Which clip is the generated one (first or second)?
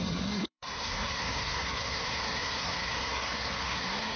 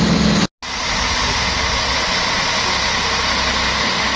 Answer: first